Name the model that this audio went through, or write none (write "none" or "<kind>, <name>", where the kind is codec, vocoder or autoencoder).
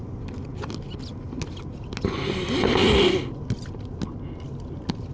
none